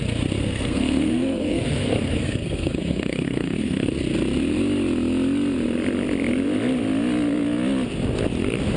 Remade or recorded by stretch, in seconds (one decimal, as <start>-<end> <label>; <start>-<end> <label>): 0.0-0.4 recorded; 0.4-4.0 remade; 4.0-8.8 recorded